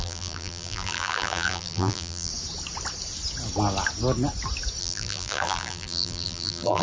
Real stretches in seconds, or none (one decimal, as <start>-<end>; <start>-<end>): 2.3-4.8